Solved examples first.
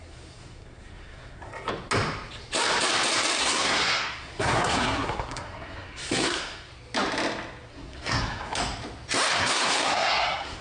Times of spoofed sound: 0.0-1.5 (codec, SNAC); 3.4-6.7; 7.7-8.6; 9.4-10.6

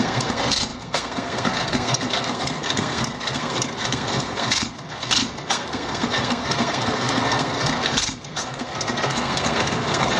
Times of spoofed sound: 0.0-10.2 (codec, SNAC)

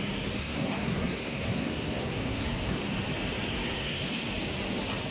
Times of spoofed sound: 0.4-2.8 (codec, SNAC); 3.5-4.3

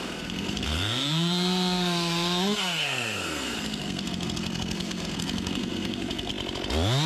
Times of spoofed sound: 0.0-6.3 (codec, SNAC)